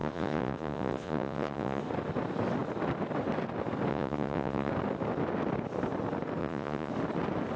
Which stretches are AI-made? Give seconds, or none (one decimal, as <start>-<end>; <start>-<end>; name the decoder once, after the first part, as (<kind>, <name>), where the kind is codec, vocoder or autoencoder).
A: 0.0-1.8 (vocoder, Vocos); 3.9-4.7; 6.4-6.9